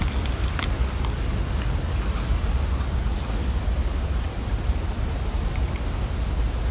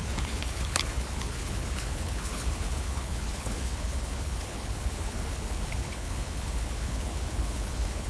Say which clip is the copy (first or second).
second